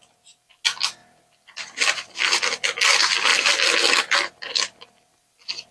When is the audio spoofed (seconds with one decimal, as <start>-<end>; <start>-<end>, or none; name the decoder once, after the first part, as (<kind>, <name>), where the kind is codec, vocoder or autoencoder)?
1.0-2.8 (vocoder, BigVGAN v2); 3.3-5.1